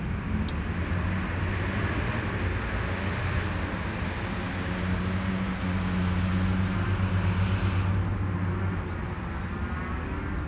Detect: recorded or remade recorded